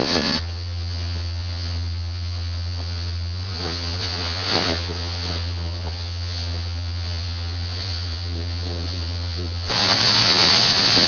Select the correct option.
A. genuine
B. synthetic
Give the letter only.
B